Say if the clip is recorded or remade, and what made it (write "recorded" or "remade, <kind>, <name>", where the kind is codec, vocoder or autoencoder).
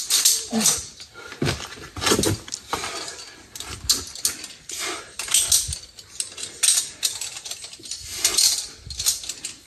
recorded